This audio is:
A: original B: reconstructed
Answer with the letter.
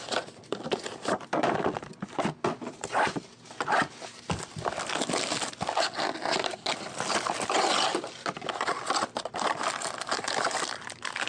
A